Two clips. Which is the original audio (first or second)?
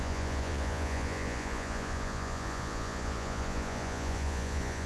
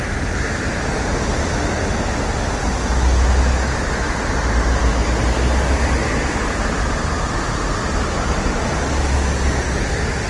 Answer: second